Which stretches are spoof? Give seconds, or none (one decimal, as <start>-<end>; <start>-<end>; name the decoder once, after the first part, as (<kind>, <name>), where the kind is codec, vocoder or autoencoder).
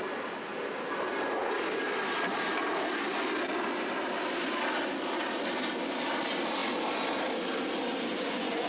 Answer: 8.1-8.7 (vocoder, Vocos)